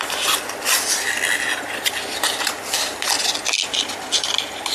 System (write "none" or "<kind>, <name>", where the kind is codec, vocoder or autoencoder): none